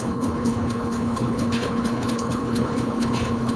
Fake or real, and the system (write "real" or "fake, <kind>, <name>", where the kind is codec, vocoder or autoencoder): fake, codec, HILCodec